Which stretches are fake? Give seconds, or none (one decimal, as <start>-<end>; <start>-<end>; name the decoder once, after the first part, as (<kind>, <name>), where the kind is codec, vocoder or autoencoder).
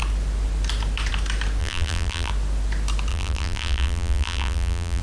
1.6-2.3 (vocoder, BigVGAN v2); 3.1-5.0